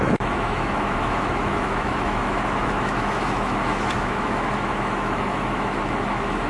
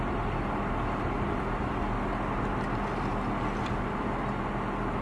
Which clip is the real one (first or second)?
second